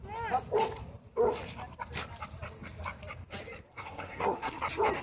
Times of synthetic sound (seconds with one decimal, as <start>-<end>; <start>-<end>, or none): 3.7-4.6